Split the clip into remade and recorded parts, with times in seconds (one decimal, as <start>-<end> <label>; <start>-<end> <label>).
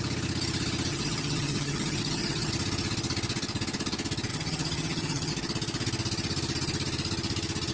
0.0-0.9 recorded; 0.9-2.5 remade; 2.5-4.3 recorded; 4.3-5.3 remade; 5.3-7.7 recorded